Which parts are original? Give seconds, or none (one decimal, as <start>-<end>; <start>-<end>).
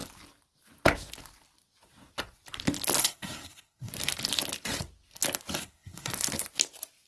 0.0-3.0; 3.9-5.6; 6.1-7.1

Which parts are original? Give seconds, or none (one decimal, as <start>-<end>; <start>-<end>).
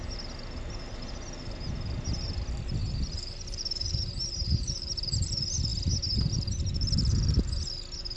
0.0-2.8; 5.3-8.2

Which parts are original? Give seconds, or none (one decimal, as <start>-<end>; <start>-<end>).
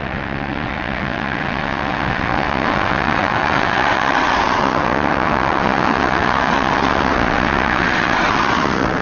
none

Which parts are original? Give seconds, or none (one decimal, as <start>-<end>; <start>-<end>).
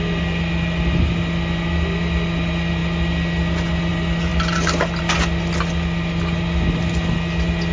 0.0-7.7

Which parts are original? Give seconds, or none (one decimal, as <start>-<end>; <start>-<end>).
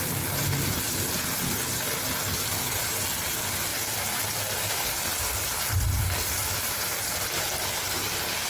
0.0-8.5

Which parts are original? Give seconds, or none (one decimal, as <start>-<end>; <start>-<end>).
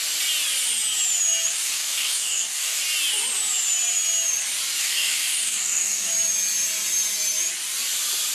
0.0-1.5; 2.8-4.8; 6.1-8.3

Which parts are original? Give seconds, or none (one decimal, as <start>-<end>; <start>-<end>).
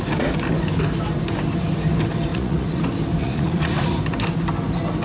0.0-2.3; 2.8-3.2; 4.0-5.0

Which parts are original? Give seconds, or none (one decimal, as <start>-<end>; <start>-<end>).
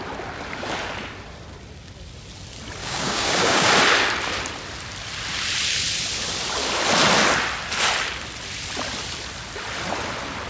0.0-2.8; 3.7-10.5